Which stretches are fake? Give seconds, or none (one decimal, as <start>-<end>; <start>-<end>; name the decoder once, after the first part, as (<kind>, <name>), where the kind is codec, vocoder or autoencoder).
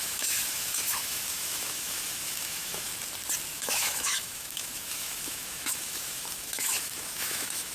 0.0-2.9 (autoencoder, DAC-VAE); 3.5-7.7